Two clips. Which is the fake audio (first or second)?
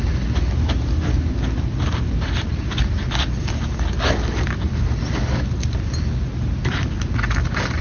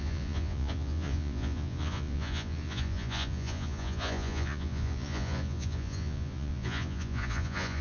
second